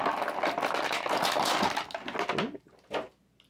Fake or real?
real